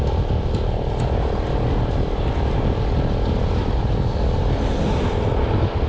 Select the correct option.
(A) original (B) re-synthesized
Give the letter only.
A